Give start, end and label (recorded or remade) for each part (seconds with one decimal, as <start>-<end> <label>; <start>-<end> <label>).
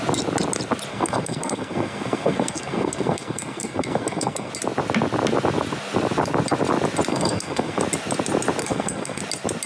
0.0-0.9 recorded; 0.9-4.5 remade; 4.5-7.1 recorded; 7.1-7.8 remade; 7.8-8.6 recorded; 8.6-9.2 remade; 9.2-9.7 recorded